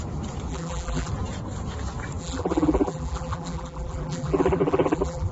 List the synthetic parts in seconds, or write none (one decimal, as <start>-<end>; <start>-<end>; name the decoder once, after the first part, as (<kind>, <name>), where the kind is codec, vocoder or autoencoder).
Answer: 0.5-1.1 (vocoder, BigVGAN v2); 2.2-5.3